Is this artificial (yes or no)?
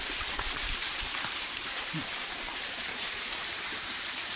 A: yes